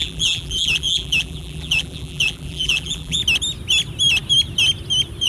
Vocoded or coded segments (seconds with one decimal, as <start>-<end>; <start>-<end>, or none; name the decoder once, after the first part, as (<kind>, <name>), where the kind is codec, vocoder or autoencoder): 0.0-3.2 (vocoder, BigVGAN v2)